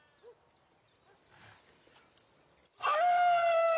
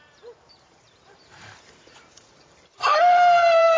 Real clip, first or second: first